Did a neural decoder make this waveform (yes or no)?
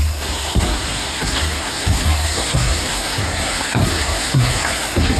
yes